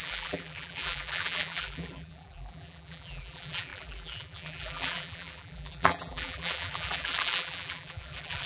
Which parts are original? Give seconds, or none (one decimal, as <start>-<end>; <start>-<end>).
none